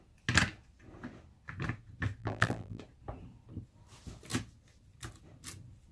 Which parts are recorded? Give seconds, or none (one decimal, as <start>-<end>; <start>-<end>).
0.0-2.2; 2.8-5.9